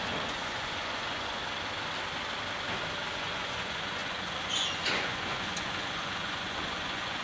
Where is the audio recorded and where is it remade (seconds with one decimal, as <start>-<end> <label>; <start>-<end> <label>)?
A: 0.0-1.4 remade; 1.4-3.1 recorded; 3.1-7.2 remade

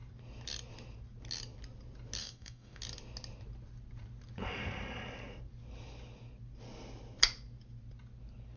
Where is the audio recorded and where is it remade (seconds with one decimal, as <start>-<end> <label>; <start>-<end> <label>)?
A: 0.0-2.2 recorded; 2.2-2.8 remade; 2.8-8.6 recorded

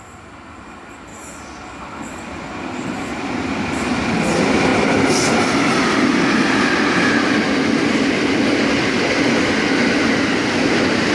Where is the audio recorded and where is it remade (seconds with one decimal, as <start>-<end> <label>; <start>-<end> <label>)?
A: 0.0-1.1 recorded; 1.1-4.0 remade; 4.0-11.1 recorded

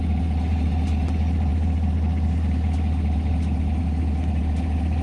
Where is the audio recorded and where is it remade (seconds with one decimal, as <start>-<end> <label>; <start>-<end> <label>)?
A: 0.0-5.0 recorded

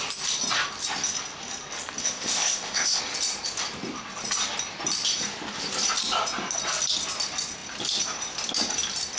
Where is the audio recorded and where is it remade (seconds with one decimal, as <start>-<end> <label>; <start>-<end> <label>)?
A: 0.0-2.0 recorded; 2.0-3.0 remade; 3.0-9.2 recorded

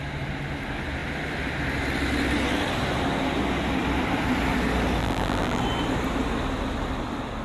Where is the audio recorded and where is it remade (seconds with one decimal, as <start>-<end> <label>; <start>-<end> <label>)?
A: 0.0-5.0 recorded; 5.0-5.6 remade; 5.6-7.4 recorded

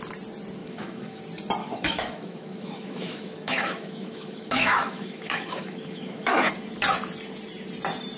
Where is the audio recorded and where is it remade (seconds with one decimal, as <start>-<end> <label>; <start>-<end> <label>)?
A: 0.0-0.6 recorded; 0.6-1.2 remade; 1.2-1.6 recorded; 1.6-6.5 remade; 6.5-8.2 recorded